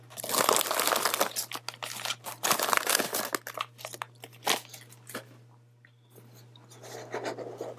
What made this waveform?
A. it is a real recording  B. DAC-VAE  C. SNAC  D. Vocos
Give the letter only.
A